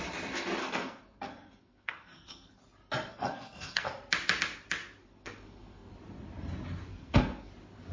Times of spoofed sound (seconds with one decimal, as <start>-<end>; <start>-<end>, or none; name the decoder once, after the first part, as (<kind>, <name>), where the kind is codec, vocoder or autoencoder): 0.6-2.6 (codec, SNAC); 3.1-3.9; 5.0-5.9; 6.9-7.5